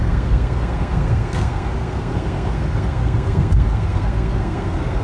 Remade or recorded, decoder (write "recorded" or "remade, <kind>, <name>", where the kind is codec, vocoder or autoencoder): remade, codec, SNAC